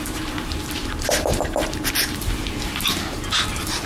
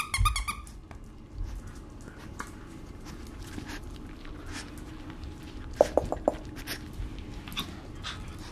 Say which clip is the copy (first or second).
first